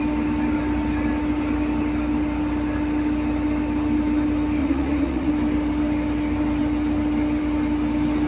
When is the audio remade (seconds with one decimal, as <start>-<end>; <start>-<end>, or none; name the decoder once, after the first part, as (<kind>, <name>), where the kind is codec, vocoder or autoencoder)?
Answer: 4.6-5.3 (vocoder, Vocos)